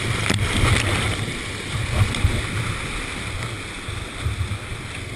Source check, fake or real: real